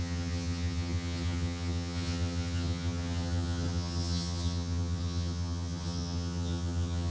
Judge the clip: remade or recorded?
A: remade